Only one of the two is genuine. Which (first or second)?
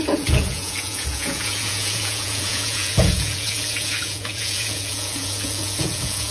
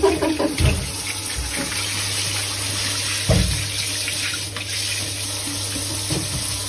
second